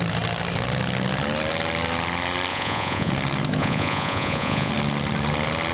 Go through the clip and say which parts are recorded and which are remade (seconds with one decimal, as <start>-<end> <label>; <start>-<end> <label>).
0.0-2.5 recorded; 2.5-3.1 remade; 3.1-3.6 recorded; 3.6-4.7 remade; 4.7-5.7 recorded